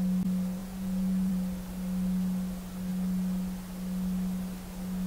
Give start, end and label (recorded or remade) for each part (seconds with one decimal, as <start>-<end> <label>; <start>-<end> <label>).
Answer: 0.0-0.6 recorded; 0.6-1.3 remade; 1.3-5.1 recorded